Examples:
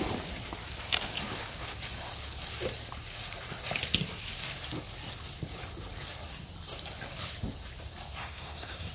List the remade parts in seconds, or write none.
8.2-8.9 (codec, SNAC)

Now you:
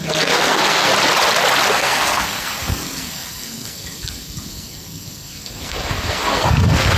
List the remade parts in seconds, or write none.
0.0-0.9 (codec, SNAC); 1.7-7.0

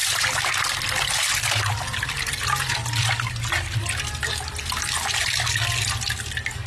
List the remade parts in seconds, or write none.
none

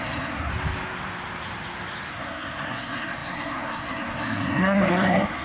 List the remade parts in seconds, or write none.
0.0-0.5 (codec, SNAC); 2.1-5.4